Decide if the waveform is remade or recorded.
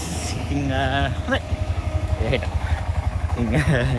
remade